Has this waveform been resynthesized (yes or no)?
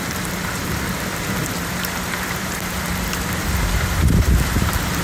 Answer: yes